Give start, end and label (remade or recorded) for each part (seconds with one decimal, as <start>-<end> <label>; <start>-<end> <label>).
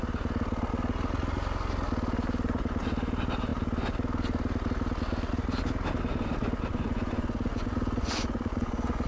0.0-6.7 recorded; 6.7-9.1 remade